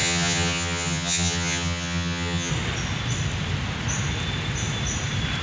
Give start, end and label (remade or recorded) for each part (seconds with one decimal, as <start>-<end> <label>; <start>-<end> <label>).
0.0-2.5 remade; 2.5-5.4 recorded